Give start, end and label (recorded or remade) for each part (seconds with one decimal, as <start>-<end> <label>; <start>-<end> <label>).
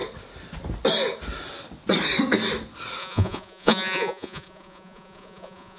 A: 0.0-3.0 recorded; 3.0-5.8 remade